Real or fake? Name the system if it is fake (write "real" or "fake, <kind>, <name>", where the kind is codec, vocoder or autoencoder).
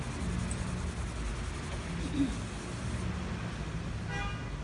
real